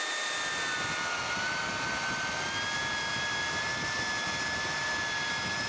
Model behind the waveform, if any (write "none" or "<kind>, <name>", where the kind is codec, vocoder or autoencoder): none